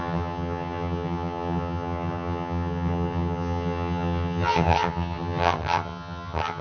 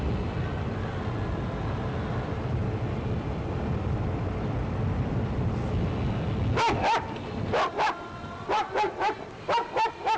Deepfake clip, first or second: first